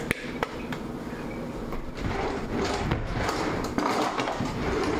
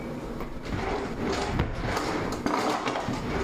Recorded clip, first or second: second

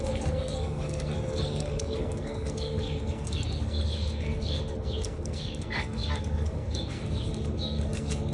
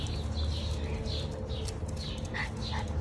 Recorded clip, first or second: second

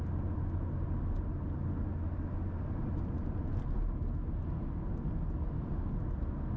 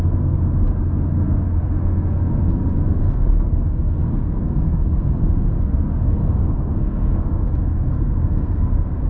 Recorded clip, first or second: first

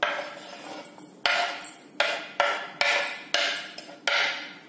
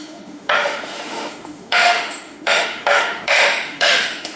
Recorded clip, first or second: first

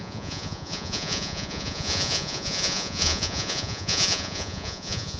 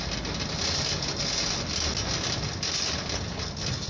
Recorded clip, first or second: second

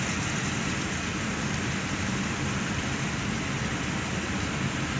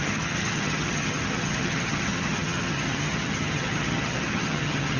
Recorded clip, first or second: first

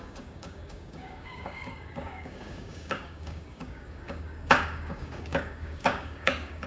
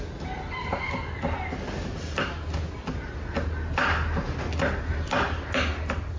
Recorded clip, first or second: second